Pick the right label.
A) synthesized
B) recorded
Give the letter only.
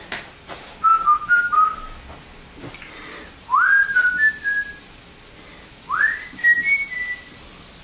B